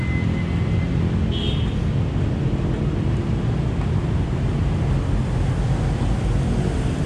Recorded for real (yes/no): yes